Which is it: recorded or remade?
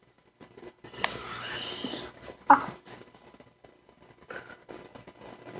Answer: recorded